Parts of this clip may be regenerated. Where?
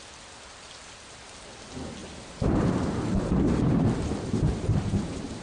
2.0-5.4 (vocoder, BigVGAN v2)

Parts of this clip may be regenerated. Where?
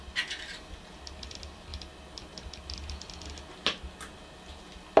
none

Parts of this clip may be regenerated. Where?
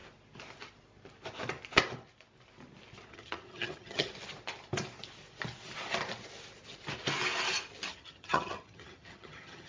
3.1-4.1 (vocoder, HiFi-GAN); 7.9-9.7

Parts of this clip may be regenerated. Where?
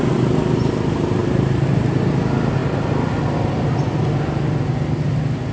1.2-2.0 (vocoder, BigVGAN v2)